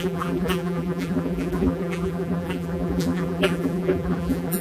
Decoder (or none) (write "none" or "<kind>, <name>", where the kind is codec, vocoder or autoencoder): vocoder, BigVGAN v2